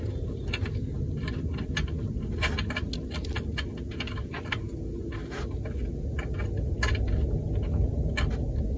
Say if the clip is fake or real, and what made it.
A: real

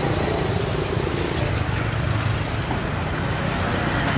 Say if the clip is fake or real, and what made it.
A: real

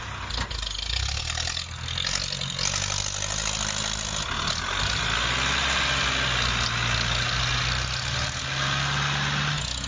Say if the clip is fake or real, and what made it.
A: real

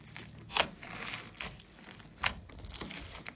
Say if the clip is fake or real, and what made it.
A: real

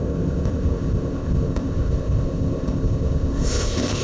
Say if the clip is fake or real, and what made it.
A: fake, codec, ZipCodec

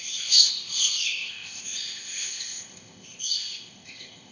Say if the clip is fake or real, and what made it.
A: fake, codec, ZipCodec